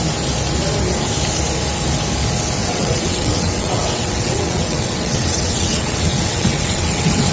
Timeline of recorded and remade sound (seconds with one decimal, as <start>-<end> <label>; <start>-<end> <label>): 0.0-2.6 recorded; 2.6-7.3 remade